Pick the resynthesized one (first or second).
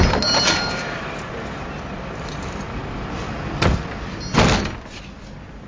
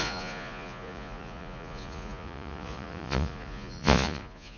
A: second